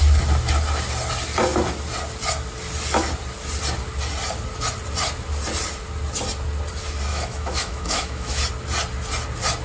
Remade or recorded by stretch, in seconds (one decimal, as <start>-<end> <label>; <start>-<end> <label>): 0.0-7.1 recorded; 7.1-8.4 remade; 8.4-9.6 recorded